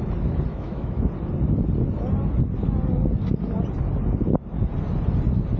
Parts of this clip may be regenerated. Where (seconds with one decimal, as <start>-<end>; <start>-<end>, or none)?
0.5-1.1